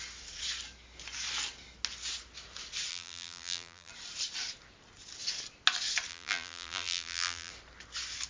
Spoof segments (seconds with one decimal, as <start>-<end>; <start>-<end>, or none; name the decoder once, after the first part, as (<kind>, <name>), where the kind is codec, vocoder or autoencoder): 2.9-3.9 (vocoder, BigVGAN v2); 6.1-7.5